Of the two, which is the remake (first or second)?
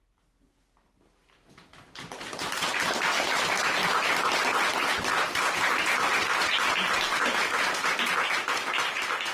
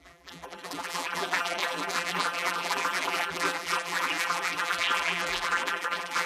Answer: second